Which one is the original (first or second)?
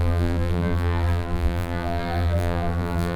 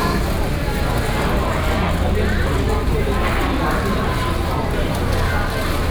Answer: second